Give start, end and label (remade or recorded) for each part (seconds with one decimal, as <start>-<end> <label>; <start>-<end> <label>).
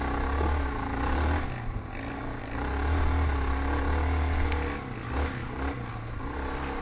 0.0-6.8 recorded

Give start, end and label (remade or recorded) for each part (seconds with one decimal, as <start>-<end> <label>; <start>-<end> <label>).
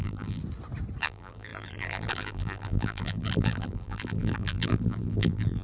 0.0-0.4 remade; 0.4-1.0 recorded; 1.0-5.6 remade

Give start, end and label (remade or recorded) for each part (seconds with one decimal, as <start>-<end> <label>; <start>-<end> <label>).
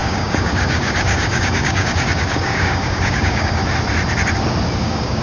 0.0-3.6 remade; 3.6-4.8 recorded; 4.8-5.2 remade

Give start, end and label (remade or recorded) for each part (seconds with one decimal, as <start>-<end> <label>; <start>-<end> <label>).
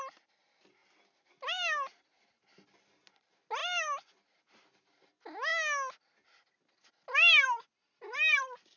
0.0-8.8 recorded